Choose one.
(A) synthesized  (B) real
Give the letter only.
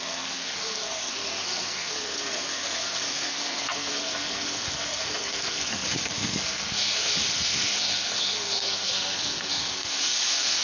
A